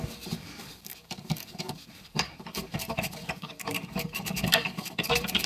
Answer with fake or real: fake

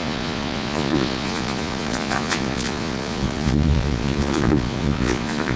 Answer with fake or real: fake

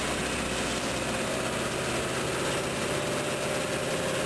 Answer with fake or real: real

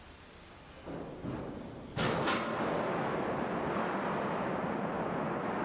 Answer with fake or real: real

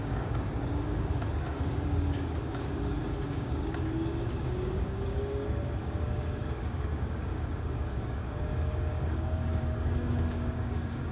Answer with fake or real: fake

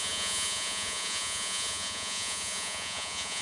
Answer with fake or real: fake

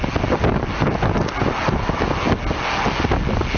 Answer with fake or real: real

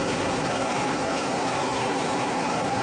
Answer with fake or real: fake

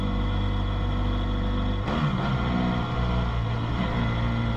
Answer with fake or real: real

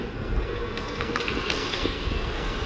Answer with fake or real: fake